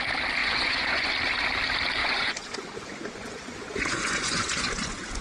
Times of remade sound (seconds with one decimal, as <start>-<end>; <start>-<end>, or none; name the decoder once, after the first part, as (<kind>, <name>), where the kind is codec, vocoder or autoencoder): 0.4-1.1 (vocoder, Vocos); 2.0-5.2